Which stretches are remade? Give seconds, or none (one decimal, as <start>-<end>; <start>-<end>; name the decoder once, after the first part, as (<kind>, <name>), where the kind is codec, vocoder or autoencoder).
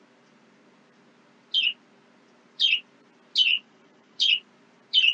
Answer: 3.5-4.3 (vocoder, Vocos)